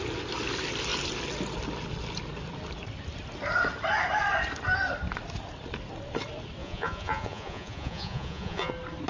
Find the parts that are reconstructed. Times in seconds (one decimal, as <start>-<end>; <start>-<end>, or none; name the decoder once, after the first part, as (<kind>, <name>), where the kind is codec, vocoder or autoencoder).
6.6-8.7 (vocoder, Vocos)